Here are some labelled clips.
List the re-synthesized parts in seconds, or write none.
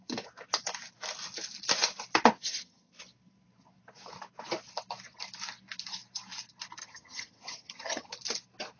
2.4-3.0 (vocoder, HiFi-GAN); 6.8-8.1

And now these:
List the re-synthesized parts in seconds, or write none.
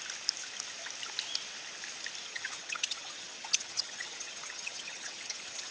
2.3-5.7 (vocoder, HiFi-GAN)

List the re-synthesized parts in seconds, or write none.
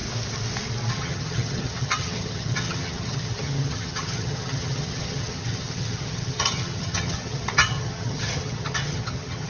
0.9-9.5 (vocoder, HiFi-GAN)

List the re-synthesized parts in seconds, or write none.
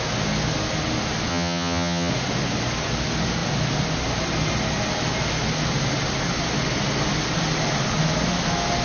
1.3-2.1 (vocoder, HiFi-GAN)